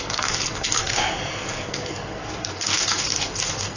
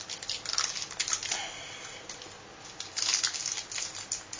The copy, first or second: first